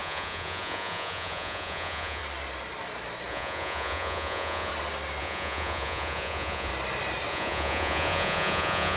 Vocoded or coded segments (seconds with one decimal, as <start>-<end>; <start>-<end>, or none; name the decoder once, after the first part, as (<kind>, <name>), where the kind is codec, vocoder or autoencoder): 0.0-2.2 (vocoder, Vocos); 3.3-4.7; 5.2-6.7; 7.3-9.0